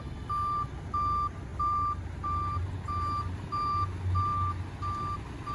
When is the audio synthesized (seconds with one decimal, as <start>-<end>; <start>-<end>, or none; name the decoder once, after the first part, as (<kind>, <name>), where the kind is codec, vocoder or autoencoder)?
1.5-3.7 (vocoder, BigVGAN v2)